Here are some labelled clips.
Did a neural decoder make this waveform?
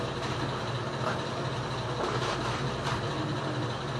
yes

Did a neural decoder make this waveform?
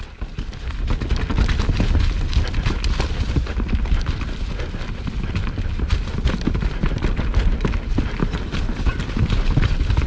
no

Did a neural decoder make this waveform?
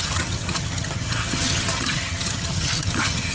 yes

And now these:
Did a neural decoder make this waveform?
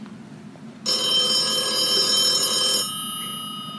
no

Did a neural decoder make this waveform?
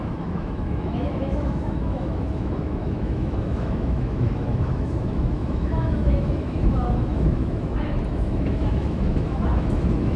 yes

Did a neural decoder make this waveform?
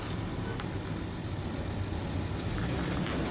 no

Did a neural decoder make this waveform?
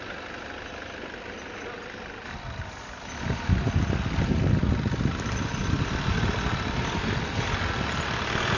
no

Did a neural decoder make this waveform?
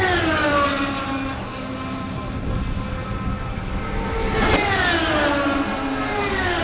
no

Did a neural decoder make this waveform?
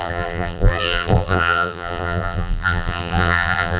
yes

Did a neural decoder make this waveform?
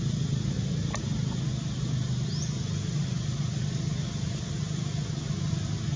no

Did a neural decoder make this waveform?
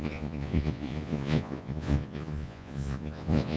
yes